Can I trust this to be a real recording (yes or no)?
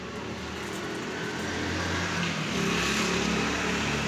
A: yes